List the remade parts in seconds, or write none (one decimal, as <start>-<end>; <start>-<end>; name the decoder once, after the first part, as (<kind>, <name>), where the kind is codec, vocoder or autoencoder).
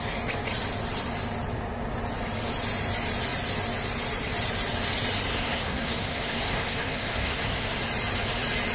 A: 5.3-7.8 (codec, SNAC)